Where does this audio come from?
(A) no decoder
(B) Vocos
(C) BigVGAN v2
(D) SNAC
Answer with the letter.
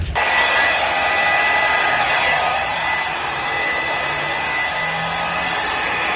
A